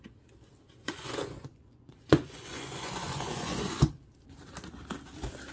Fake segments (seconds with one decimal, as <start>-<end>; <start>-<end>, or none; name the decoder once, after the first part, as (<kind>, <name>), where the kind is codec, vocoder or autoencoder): 0.8-3.9 (vocoder, Vocos)